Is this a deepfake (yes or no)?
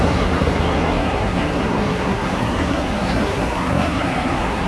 yes